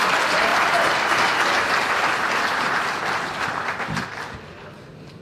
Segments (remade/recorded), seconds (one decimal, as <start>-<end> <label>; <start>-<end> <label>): 0.0-5.2 recorded